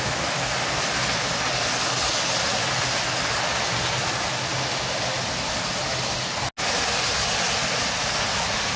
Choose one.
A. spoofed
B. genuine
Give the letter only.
B